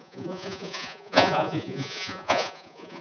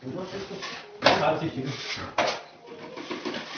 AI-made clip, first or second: first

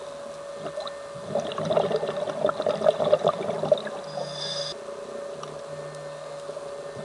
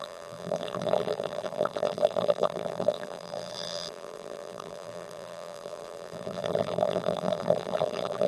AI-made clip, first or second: second